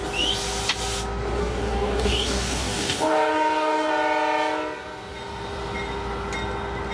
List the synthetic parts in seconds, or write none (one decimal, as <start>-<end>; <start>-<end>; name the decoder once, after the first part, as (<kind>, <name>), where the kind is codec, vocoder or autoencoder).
1.4-3.9 (codec, DAC)

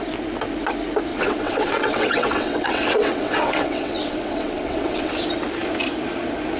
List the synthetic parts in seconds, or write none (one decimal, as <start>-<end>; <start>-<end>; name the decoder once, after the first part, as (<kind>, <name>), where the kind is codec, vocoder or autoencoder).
1.1-5.1 (vocoder, WaveNeXt)